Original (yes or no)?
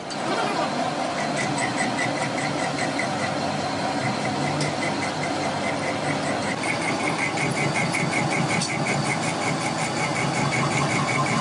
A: yes